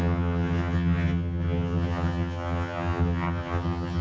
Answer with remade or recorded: remade